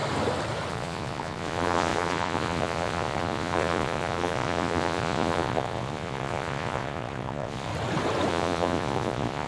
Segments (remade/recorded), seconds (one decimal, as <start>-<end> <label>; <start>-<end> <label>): 0.0-0.7 recorded; 0.7-7.7 remade; 7.7-8.3 recorded; 8.3-9.5 remade